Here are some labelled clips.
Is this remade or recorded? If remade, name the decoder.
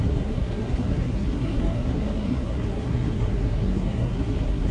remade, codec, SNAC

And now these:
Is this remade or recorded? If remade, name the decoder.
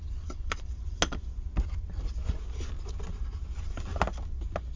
recorded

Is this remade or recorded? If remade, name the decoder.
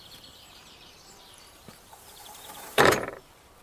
remade, vocoder, BigVGAN v2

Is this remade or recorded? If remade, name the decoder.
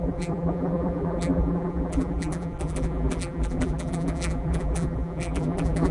remade, vocoder, BigVGAN v2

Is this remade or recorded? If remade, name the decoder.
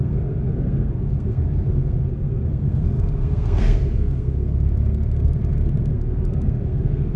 remade, codec, SNAC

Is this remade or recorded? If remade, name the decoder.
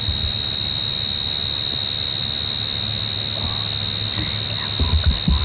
recorded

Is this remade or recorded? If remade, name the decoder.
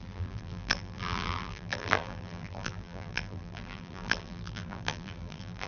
remade, vocoder, BigVGAN v2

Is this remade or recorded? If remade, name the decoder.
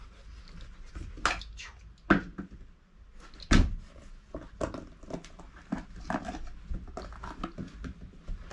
recorded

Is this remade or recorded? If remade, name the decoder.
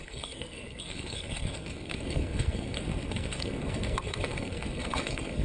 remade, codec, SNAC